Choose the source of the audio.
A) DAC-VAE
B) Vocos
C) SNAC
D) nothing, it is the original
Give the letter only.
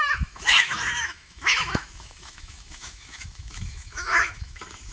A